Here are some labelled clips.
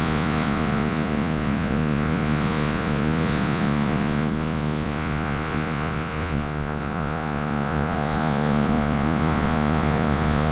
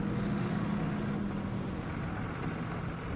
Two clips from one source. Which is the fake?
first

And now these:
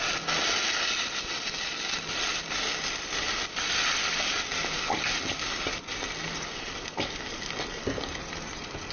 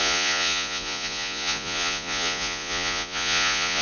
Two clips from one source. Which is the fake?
second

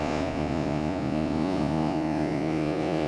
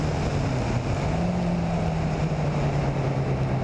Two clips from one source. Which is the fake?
first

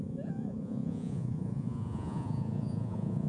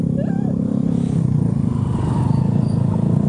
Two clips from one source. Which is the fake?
first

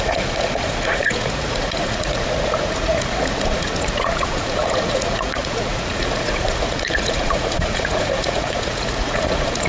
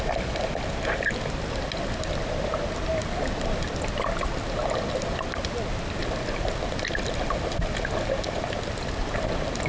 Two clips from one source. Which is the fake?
first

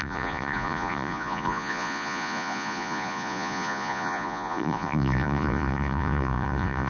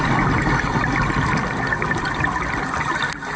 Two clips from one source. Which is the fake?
first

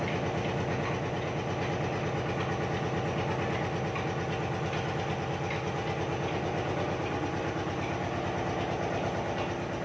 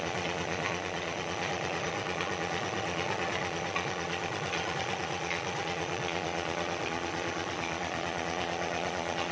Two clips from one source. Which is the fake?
second